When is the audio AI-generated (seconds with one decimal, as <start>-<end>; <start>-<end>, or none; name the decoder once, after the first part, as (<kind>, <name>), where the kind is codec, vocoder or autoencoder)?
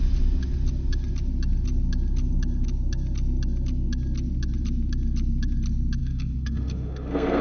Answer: 6.0-7.4 (codec, SNAC)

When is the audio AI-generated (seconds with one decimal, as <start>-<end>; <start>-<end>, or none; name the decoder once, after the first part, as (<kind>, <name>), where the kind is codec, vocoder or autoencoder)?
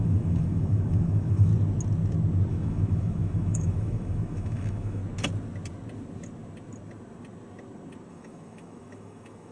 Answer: 0.0-1.5 (autoencoder, DAC-VAE); 2.5-5.0; 8.1-9.5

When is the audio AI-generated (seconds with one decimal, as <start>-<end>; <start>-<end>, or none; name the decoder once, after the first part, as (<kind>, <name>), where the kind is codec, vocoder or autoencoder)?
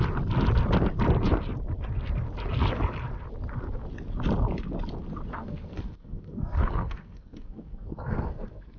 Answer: 5.3-8.8 (codec, SNAC)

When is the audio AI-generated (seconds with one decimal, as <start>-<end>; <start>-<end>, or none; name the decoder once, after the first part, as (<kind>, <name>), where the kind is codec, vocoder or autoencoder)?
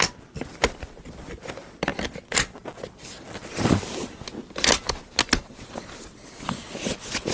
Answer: none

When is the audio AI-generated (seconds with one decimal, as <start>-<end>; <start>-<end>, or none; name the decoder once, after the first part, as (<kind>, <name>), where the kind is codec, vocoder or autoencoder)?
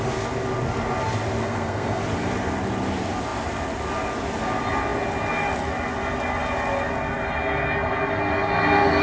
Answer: 1.4-2.0 (codec, SNAC)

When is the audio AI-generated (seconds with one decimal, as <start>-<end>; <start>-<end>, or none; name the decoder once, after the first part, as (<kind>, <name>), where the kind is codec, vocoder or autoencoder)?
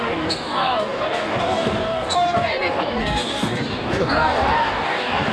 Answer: 0.0-5.3 (codec, DAC)